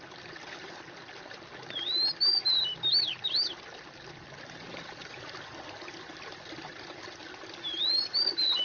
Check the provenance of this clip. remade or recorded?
recorded